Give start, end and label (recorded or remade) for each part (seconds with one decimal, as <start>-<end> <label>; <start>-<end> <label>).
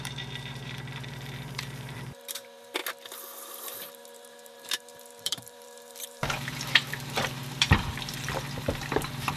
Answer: 0.0-2.8 remade; 2.8-3.6 recorded; 3.6-9.4 remade